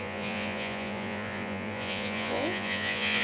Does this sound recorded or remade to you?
remade